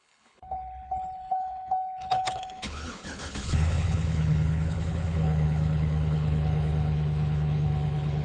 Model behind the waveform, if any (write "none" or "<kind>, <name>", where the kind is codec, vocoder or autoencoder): codec, HILCodec